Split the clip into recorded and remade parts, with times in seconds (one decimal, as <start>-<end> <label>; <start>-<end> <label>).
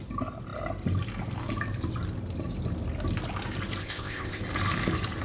0.0-3.8 recorded; 3.8-4.4 remade; 4.4-5.2 recorded